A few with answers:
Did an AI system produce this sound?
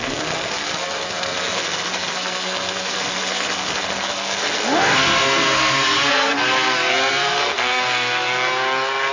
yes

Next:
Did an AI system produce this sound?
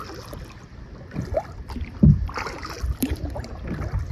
no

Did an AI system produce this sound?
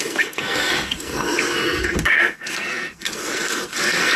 yes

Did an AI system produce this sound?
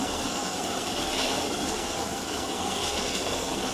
yes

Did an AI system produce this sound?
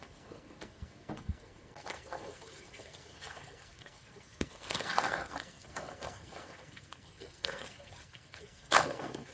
yes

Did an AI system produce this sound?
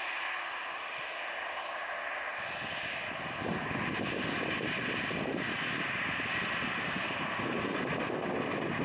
no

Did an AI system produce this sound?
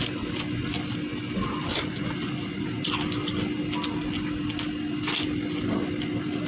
no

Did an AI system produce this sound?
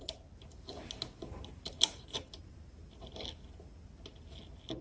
no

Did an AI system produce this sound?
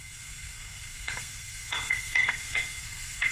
yes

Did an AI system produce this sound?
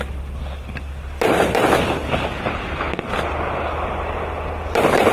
no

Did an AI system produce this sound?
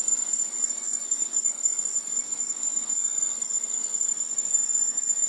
yes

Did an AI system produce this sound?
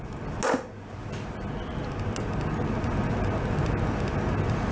no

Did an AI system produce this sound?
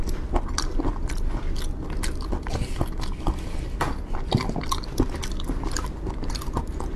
no